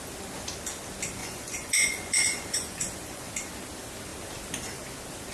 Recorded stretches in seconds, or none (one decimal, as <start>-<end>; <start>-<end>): 0.0-1.2; 3.3-5.3